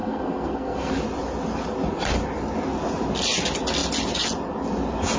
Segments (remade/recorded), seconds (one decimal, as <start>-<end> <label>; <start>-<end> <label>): 0.0-0.9 remade; 0.9-5.2 recorded